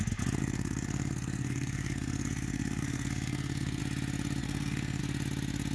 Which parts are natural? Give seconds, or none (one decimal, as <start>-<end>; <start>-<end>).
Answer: 0.0-0.4; 3.8-4.4; 5.0-5.7

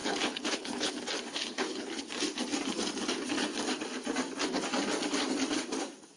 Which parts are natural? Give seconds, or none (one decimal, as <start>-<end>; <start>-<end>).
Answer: 0.9-1.4; 2.0-6.2

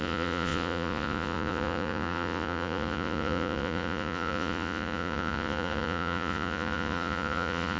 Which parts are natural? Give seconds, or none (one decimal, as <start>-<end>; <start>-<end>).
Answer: none